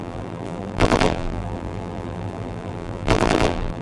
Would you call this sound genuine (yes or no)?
no